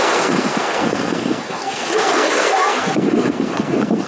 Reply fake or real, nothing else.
fake